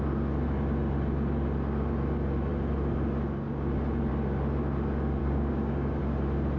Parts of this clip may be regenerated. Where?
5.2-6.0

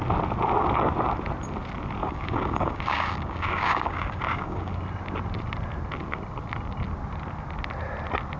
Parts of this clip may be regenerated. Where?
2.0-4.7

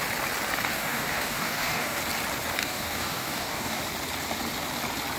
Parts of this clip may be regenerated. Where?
0.7-2.0; 2.6-3.8

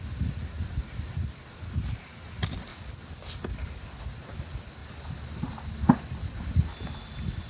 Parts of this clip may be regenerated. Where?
none

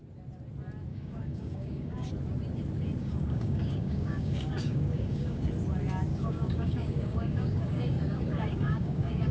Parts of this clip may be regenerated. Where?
0.9-2.1; 3.0-5.5; 6.1-9.3